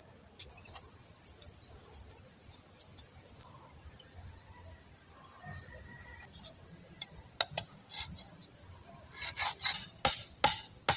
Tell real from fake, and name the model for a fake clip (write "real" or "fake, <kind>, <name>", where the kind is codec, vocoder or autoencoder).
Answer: real